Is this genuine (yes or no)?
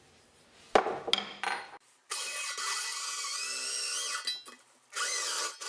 yes